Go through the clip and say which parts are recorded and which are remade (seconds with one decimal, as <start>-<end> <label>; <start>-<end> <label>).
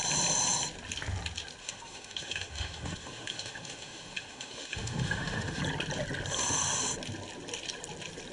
0.0-1.6 recorded; 1.6-5.6 remade; 5.6-8.3 recorded